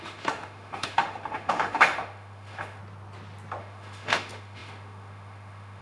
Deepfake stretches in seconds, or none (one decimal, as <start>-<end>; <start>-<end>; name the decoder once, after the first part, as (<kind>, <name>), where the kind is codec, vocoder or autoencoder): 0.0-2.8 (autoencoder, DAC-VAE); 3.6-5.8